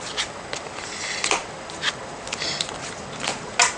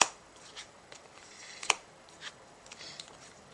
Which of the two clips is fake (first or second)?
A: second